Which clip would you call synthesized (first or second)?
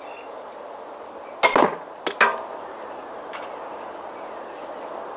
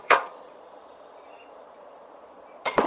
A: second